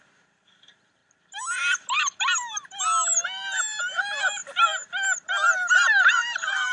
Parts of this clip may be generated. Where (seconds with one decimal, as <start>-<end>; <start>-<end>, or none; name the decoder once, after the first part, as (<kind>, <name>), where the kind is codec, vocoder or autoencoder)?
0.0-1.0 (vocoder, BigVGAN v2); 3.8-4.4; 5.7-6.7